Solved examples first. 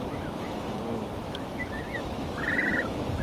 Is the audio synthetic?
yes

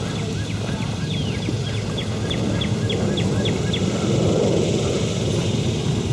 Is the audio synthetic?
no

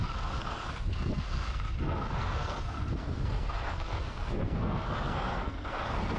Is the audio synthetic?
yes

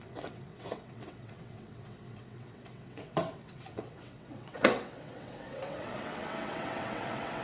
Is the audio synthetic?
yes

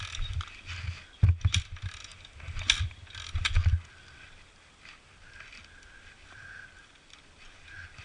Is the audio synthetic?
no